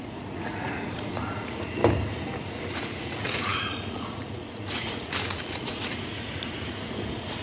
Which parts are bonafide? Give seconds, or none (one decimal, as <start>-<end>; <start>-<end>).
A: 1.8-2.4

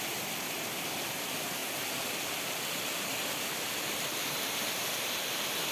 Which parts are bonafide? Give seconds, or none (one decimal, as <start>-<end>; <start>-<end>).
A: 0.0-5.7